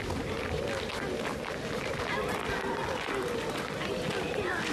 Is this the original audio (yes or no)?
yes